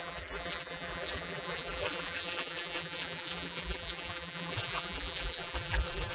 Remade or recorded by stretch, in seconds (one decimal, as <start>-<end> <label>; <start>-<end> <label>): 0.0-6.1 remade